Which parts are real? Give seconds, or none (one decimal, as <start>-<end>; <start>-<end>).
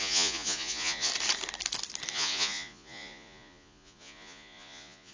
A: 1.1-2.1